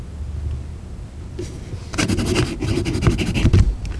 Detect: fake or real real